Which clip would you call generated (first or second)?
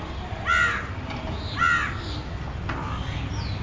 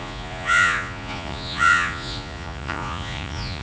second